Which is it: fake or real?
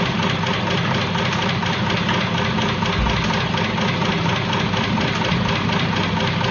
real